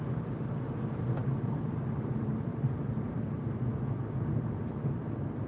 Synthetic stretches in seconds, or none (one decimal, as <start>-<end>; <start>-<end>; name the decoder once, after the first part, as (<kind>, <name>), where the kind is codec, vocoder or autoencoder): none